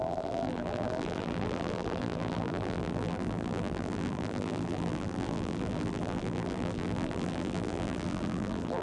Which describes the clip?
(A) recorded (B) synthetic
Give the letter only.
B